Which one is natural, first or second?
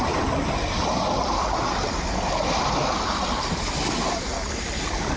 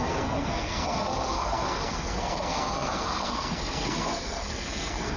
first